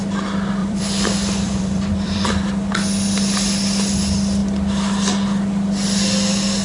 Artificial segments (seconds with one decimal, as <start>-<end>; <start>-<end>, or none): 0.6-2.5

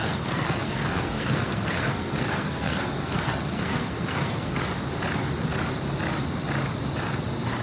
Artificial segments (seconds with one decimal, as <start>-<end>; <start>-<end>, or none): 0.0-4.6

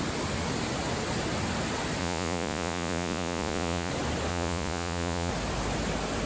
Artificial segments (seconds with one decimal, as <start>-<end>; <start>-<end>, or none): 2.0-3.9; 4.3-5.3

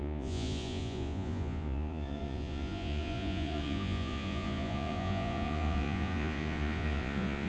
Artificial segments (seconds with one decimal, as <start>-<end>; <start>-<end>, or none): 0.0-7.5

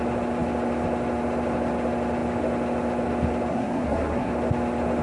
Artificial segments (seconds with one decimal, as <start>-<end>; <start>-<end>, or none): 3.5-4.3

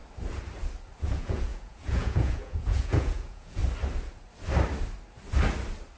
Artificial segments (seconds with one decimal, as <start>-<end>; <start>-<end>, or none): 1.0-3.6

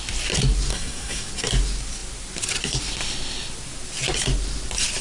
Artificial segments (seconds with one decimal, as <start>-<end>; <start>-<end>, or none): 0.7-1.3

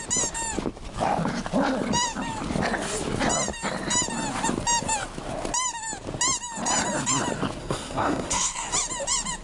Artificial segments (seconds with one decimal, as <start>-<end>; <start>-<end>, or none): 7.6-8.7